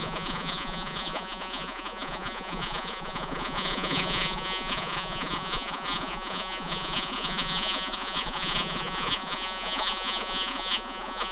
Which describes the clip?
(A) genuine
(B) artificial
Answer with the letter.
B